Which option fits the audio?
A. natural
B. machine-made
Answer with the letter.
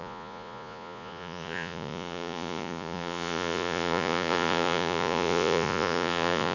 B